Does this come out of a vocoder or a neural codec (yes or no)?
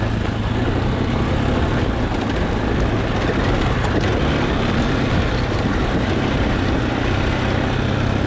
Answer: no